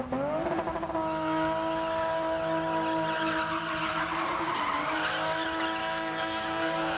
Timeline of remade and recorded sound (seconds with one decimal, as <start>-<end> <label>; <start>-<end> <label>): 0.0-5.8 recorded; 5.8-7.0 remade